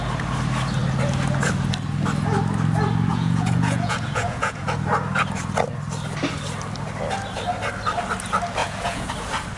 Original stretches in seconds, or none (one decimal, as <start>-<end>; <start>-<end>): 0.0-3.1; 4.6-8.6; 9.1-9.6